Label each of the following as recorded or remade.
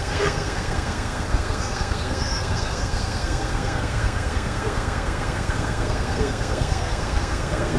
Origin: remade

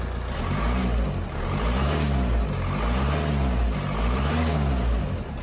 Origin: recorded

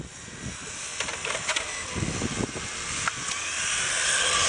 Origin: recorded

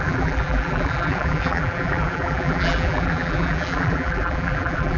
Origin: remade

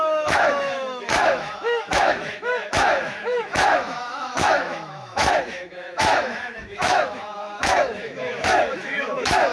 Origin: remade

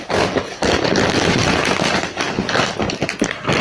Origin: recorded